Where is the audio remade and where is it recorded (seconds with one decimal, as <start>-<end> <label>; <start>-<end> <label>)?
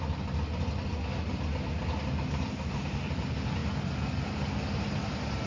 0.0-5.5 recorded